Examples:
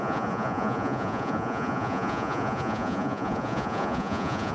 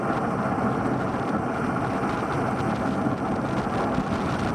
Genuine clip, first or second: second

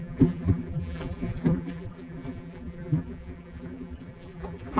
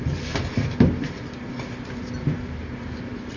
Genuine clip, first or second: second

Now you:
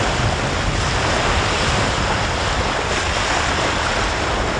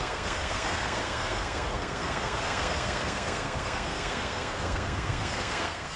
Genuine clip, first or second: first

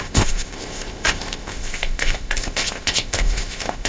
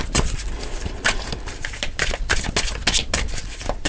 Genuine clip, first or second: second